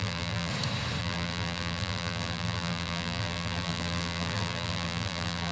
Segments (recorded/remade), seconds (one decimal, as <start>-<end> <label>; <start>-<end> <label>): 0.0-0.5 remade; 0.5-1.0 recorded; 1.0-5.5 remade